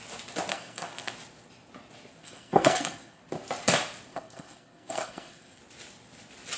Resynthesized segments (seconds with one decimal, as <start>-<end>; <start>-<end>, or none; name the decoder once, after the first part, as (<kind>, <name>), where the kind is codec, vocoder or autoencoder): 0.5-1.1 (codec, SNAC); 2.2-3.2; 4.1-5.6